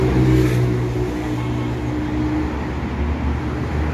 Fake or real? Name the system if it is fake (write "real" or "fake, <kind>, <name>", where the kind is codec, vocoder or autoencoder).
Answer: real